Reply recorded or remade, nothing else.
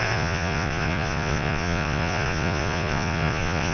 remade